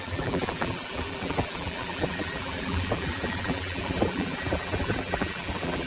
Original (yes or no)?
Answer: no